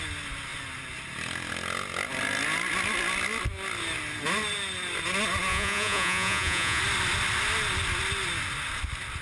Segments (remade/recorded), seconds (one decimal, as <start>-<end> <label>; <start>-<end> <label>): 0.0-5.5 recorded; 5.5-6.8 remade; 6.8-9.2 recorded